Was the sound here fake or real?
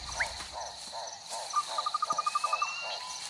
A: fake